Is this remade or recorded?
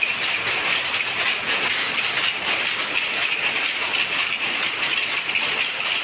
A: recorded